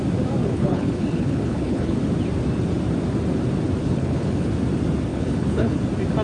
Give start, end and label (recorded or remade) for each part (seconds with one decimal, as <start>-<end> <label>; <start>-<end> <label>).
0.0-0.4 recorded; 0.4-2.0 remade; 2.0-3.8 recorded; 3.8-4.5 remade; 4.5-5.1 recorded; 5.1-5.8 remade; 5.8-6.2 recorded